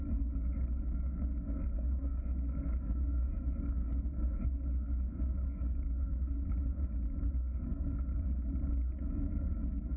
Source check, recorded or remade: remade